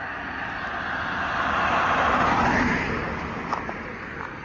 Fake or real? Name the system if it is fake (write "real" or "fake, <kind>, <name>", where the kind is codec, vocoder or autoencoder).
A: real